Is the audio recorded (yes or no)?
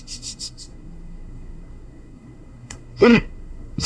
no